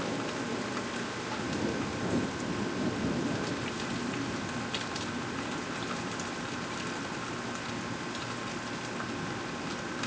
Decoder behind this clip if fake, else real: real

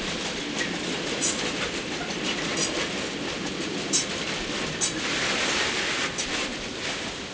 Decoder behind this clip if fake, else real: real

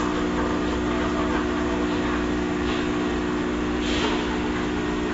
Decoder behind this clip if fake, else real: real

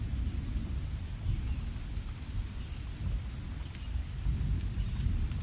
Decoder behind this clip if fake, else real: real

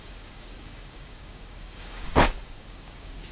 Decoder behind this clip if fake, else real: fake, codec, DAC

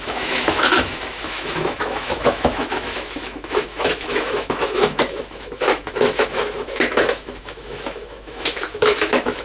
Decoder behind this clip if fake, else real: fake, autoencoder, DAC-VAE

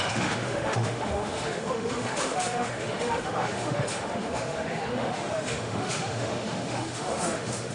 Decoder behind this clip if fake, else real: fake, autoencoder, DAC-VAE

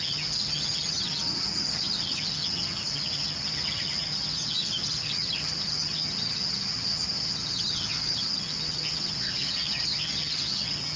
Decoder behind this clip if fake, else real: fake, vocoder, HiFi-GAN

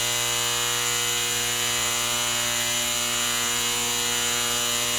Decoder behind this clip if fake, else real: real